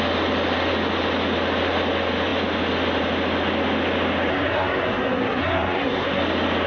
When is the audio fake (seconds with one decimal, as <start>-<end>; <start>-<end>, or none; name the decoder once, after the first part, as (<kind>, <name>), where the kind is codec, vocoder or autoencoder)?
4.3-6.2 (codec, SNAC)